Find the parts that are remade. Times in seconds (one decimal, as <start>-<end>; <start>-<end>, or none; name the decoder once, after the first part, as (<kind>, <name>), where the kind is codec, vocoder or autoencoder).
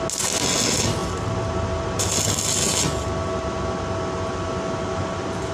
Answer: none